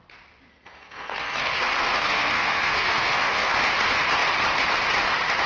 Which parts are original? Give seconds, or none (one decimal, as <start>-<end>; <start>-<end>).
0.0-0.5; 3.5-5.5